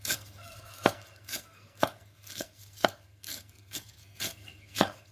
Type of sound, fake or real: fake